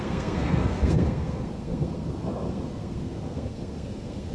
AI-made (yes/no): yes